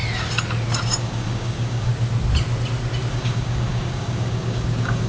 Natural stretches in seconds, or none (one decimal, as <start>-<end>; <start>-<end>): 0.0-1.0; 1.9-3.1